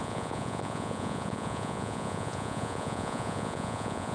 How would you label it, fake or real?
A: fake